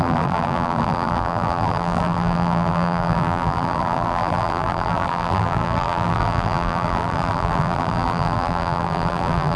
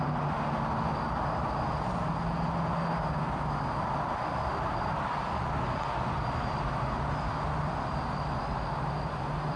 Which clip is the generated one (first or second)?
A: first